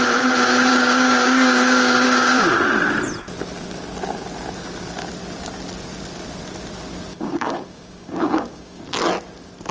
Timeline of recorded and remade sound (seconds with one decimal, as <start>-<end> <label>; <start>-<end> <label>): 0.0-0.7 recorded; 0.7-2.5 remade; 2.5-7.1 recorded; 7.1-8.8 remade; 8.8-9.7 recorded